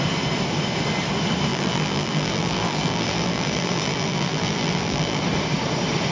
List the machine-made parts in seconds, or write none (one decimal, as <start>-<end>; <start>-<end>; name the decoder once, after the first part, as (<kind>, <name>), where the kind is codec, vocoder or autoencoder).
1.5-5.2 (vocoder, BigVGAN v2)